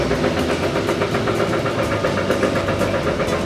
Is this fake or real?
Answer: real